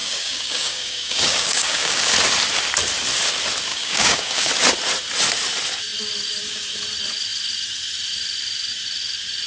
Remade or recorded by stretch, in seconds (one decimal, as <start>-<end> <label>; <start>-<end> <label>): 0.0-2.1 remade; 2.1-3.7 recorded; 3.7-4.5 remade; 4.5-9.5 recorded